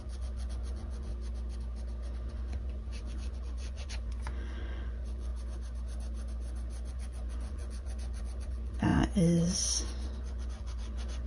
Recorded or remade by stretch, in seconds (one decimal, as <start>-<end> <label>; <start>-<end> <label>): 0.0-1.1 remade; 1.1-2.3 recorded; 2.3-5.3 remade; 5.3-6.9 recorded; 6.9-11.3 remade